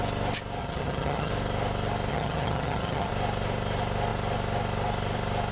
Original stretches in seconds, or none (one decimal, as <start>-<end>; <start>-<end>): 0.0-0.6; 1.3-2.1; 3.1-5.5